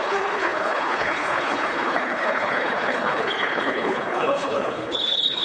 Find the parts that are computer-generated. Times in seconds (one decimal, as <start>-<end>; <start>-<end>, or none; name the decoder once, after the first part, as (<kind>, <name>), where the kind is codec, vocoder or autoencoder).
0.0-5.4 (codec, HILCodec)

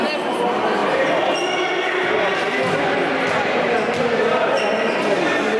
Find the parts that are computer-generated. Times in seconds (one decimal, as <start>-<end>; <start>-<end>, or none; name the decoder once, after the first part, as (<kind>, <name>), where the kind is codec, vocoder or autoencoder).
none

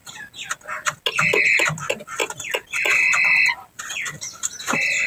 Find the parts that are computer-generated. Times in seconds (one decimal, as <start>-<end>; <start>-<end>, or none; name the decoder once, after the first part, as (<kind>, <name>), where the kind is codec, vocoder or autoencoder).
none

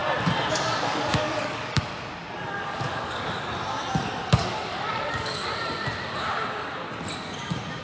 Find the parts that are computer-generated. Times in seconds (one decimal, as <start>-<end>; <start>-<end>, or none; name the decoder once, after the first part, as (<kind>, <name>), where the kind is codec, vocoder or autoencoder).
0.7-1.9 (codec, DAC); 2.5-3.5; 4.2-5.5

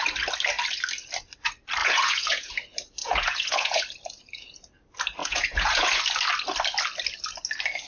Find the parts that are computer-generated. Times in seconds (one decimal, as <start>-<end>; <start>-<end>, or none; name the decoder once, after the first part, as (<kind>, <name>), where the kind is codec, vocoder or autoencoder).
1.8-2.5 (vocoder, Vocos); 3.0-3.8; 5.2-6.0

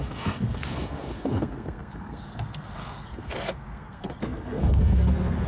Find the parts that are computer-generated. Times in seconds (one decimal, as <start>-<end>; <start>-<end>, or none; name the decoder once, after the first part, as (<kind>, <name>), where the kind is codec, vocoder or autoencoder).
0.0-5.5 (codec, SNAC)